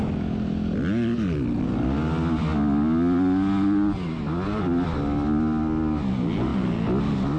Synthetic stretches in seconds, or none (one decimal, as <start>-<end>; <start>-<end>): none

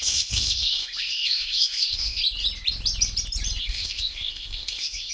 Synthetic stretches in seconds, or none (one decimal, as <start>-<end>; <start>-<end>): 0.0-2.2; 3.6-5.1

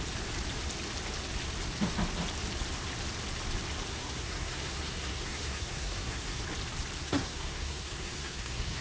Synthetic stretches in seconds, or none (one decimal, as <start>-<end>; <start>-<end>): 3.9-6.4; 7.0-8.8

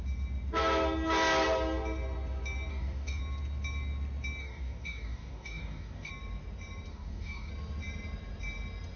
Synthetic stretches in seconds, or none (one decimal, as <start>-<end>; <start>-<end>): 2.7-3.2; 4.4-6.1; 6.9-7.5

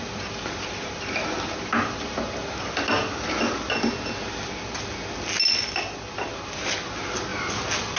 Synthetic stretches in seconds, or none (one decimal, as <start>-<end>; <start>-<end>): none

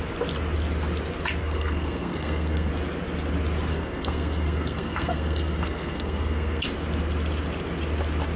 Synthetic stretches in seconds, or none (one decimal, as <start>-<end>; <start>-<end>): 1.4-2.7; 3.7-6.6

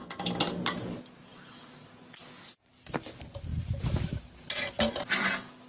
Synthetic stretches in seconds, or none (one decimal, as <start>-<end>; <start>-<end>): none

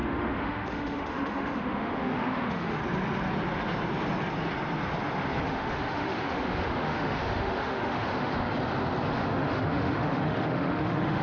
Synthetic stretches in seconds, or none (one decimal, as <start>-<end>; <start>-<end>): 0.0-2.8; 5.4-8.3; 9.1-11.2